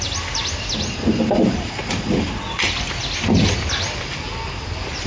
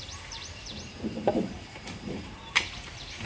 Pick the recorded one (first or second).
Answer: first